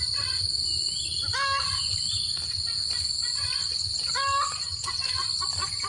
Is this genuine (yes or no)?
yes